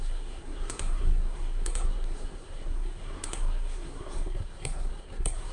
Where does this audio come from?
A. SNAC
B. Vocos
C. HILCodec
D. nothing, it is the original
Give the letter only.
A